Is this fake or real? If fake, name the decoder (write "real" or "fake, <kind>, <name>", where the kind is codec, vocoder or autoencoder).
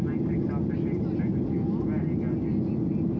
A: real